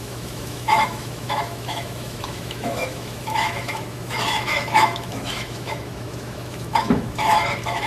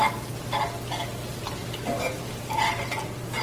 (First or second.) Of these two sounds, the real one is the second